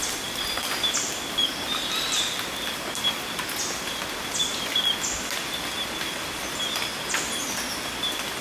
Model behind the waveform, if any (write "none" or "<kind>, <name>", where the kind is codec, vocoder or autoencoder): none